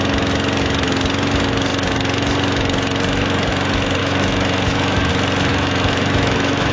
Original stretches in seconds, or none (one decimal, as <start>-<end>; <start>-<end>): 0.0-4.0; 5.1-5.5